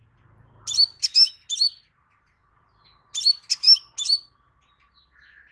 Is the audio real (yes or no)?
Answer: yes